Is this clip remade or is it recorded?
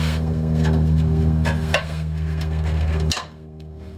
remade